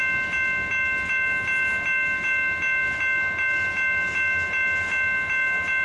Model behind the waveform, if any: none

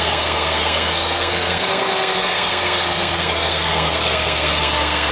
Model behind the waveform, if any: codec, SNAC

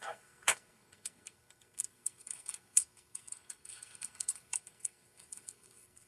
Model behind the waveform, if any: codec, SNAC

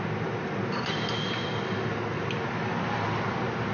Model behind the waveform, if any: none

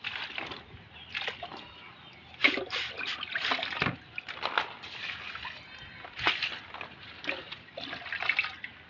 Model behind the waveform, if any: none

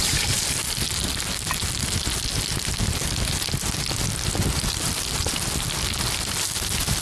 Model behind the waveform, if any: none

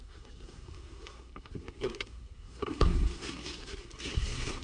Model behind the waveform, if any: codec, SNAC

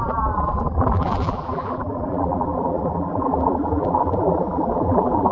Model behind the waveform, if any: vocoder, BigVGAN v2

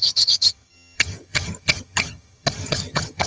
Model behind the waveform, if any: vocoder, HiFi-GAN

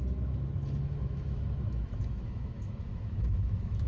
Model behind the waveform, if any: autoencoder, DAC-VAE